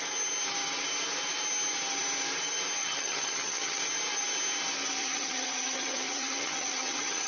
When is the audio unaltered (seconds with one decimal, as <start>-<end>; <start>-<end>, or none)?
0.0-2.8; 3.8-5.0